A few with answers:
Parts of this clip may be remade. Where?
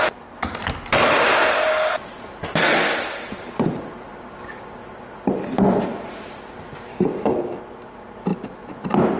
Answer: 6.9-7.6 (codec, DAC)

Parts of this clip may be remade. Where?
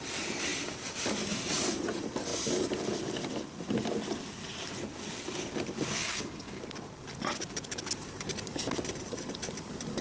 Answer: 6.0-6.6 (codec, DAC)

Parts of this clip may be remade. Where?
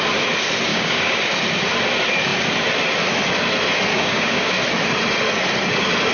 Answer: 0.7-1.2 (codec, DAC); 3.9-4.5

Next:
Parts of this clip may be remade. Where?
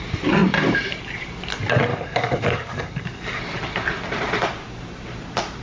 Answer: 1.9-3.4 (codec, DAC)